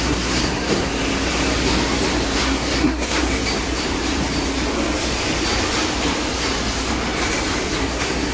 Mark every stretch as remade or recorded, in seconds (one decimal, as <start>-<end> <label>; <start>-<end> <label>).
0.0-0.9 remade; 0.9-2.4 recorded; 2.4-3.2 remade; 3.2-7.8 recorded; 7.8-8.3 remade